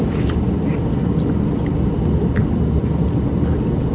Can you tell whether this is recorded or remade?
recorded